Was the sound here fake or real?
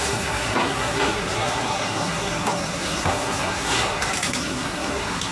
fake